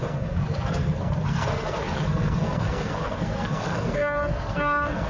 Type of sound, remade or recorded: remade